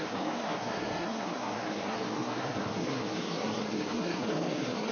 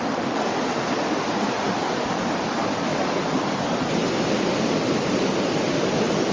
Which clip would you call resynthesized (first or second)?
first